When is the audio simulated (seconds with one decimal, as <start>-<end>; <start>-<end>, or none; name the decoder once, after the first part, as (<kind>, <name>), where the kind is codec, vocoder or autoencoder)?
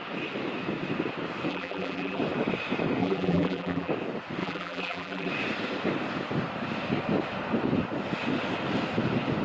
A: 1.5-2.2 (vocoder, BigVGAN v2); 3.0-3.9; 4.4-5.3